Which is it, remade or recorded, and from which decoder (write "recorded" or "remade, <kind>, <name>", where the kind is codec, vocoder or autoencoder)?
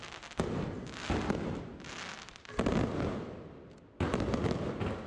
recorded